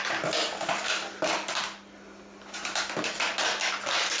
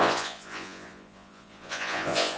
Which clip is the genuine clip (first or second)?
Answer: first